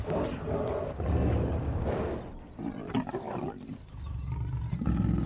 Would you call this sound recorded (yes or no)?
yes